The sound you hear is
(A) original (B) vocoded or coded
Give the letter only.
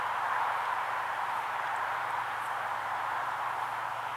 B